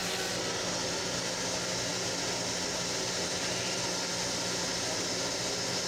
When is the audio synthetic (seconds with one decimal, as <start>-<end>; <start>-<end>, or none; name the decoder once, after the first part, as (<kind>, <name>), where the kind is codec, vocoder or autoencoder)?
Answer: none